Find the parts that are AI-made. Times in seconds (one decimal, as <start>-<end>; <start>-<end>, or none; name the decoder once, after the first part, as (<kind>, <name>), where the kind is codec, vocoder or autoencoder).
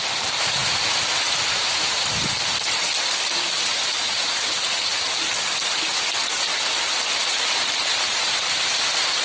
0.0-0.6 (vocoder, BigVGAN v2); 1.2-1.7; 2.2-4.9; 7.5-9.2